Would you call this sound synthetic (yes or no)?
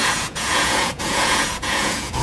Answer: yes